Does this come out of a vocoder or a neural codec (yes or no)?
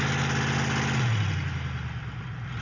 no